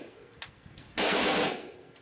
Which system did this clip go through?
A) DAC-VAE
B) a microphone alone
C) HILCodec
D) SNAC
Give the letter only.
D